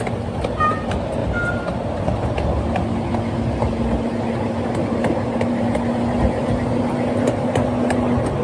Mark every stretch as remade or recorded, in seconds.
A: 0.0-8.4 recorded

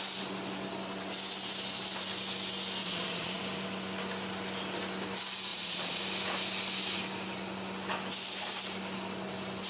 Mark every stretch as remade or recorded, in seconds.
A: 0.0-2.8 recorded; 2.8-3.4 remade; 3.4-5.5 recorded; 5.5-6.0 remade; 6.0-9.7 recorded

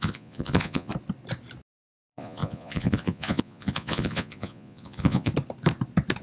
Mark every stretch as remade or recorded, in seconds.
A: 0.0-0.9 remade; 0.9-1.8 recorded; 1.8-5.3 remade; 5.3-6.2 recorded

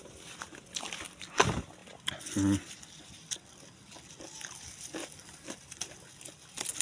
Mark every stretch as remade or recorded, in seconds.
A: 0.0-6.8 recorded

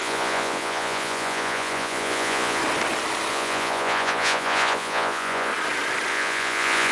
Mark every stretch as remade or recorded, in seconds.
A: 0.0-2.6 remade; 2.6-3.3 recorded; 3.3-5.5 remade; 5.5-6.1 recorded; 6.1-6.9 remade

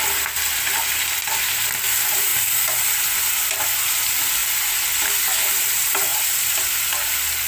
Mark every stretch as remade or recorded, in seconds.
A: 0.0-7.5 recorded